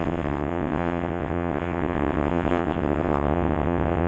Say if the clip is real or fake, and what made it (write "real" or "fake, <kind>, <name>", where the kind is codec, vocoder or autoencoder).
fake, vocoder, WaveNeXt